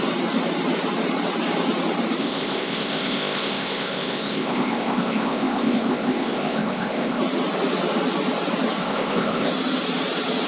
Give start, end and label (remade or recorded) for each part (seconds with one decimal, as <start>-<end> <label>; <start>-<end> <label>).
0.0-2.2 recorded; 2.2-7.2 remade; 7.2-8.8 recorded; 8.8-9.5 remade; 9.5-10.5 recorded